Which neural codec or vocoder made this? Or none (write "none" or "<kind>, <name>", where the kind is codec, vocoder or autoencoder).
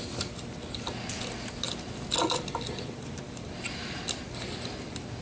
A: none